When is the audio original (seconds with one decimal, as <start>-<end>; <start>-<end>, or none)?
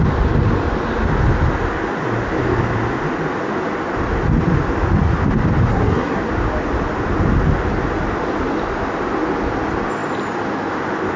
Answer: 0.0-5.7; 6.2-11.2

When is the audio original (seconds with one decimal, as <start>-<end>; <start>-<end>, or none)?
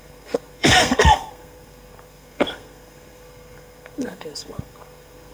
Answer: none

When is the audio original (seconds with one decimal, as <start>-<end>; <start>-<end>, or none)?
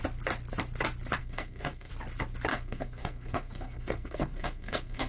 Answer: 0.0-1.2; 1.9-2.5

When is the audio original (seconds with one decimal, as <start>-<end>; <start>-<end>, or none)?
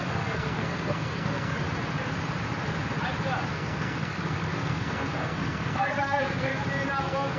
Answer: 1.6-3.5; 6.5-7.0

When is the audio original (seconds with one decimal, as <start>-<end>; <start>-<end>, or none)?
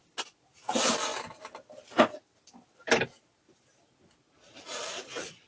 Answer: 0.0-5.5